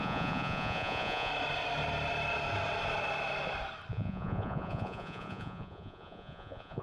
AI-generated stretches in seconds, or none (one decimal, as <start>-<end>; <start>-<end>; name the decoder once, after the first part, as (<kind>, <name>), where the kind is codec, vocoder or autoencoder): 0.0-1.3 (vocoder, Vocos); 3.9-6.8